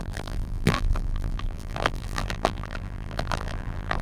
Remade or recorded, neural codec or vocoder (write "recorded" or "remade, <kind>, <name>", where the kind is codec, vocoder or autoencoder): remade, vocoder, BigVGAN v2